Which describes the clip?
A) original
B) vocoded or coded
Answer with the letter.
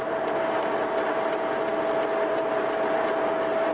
A